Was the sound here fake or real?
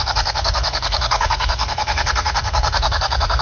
fake